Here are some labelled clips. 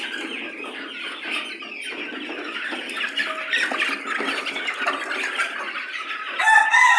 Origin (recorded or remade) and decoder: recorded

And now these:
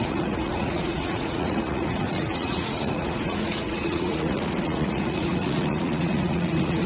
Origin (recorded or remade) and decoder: remade, vocoder, Vocos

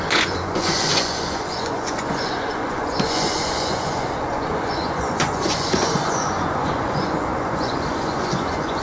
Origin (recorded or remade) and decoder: remade, vocoder, Vocos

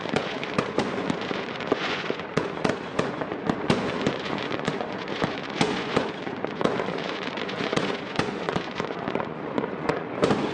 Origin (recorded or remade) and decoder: remade, vocoder, Vocos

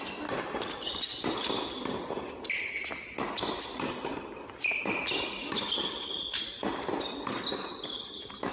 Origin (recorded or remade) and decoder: recorded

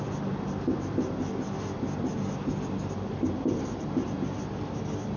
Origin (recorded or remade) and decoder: recorded